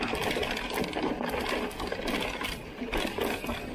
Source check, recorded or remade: recorded